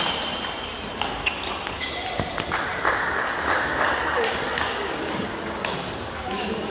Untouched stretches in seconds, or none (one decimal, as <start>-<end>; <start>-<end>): 0.0-2.7